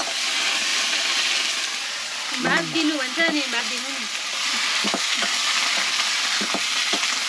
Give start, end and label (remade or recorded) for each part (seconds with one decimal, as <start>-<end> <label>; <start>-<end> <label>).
0.0-4.8 recorded; 4.8-5.3 remade; 5.3-7.3 recorded